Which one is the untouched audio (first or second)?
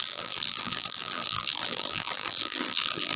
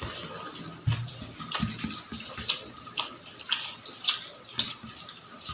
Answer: second